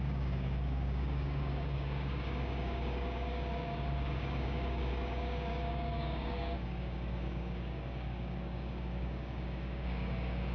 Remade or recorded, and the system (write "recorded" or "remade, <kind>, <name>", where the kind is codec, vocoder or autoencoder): remade, codec, DAC